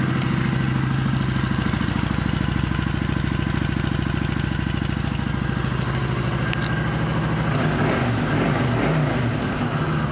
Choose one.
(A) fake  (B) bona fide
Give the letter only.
B